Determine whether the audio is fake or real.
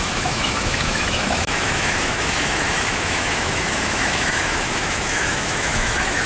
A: fake